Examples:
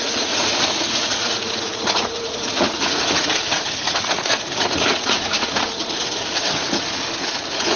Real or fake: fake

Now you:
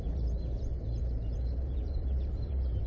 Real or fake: fake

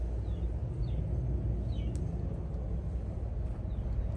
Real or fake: real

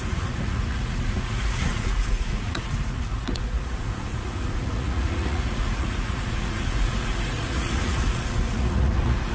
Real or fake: fake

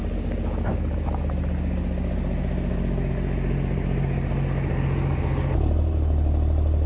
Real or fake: real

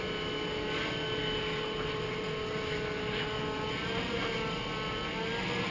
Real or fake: real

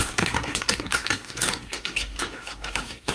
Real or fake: fake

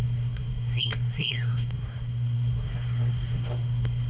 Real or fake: fake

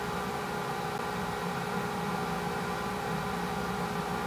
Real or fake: real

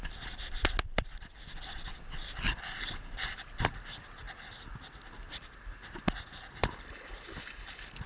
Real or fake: real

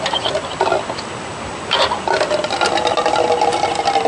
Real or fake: real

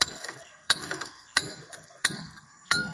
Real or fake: fake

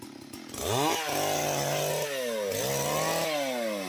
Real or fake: real